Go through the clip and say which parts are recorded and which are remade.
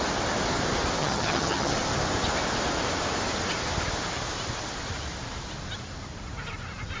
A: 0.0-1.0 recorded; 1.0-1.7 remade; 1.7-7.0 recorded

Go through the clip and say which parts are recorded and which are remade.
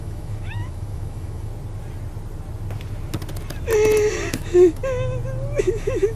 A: 0.0-1.5 remade; 1.5-4.3 recorded; 4.3-4.8 remade; 4.8-5.6 recorded; 5.6-6.2 remade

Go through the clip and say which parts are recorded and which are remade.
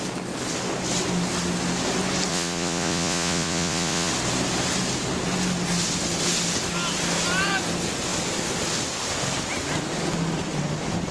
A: 0.0-2.3 recorded; 2.3-4.1 remade; 4.1-11.1 recorded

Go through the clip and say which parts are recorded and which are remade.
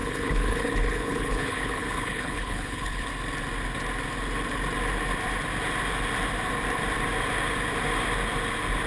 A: 0.0-3.1 remade; 3.1-8.9 recorded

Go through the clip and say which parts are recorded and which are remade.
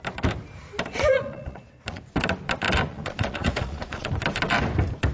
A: 0.0-1.1 recorded; 1.1-2.0 remade; 2.0-2.9 recorded; 2.9-4.1 remade; 4.1-5.1 recorded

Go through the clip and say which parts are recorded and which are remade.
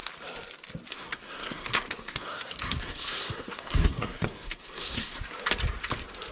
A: 0.0-0.9 recorded; 0.9-5.1 remade; 5.1-6.3 recorded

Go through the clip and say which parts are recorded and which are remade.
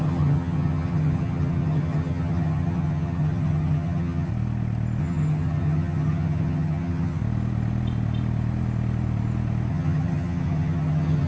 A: 0.0-4.3 remade; 4.3-5.0 recorded; 5.0-7.2 remade; 7.2-9.7 recorded; 9.7-11.3 remade